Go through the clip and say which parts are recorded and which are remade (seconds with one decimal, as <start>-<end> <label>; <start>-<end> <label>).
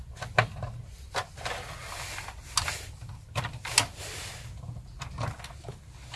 0.0-6.2 recorded